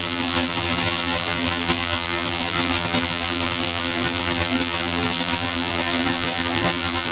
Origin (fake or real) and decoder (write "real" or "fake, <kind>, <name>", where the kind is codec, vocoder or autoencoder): fake, vocoder, BigVGAN v2